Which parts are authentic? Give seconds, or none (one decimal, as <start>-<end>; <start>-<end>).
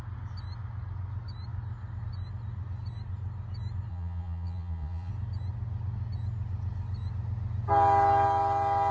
0.0-3.9; 5.1-8.9